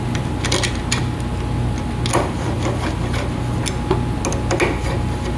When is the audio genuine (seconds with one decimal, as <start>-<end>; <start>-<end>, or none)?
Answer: 0.0-5.4